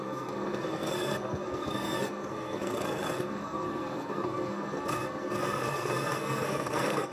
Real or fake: fake